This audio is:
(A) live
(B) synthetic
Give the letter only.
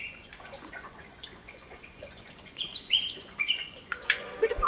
B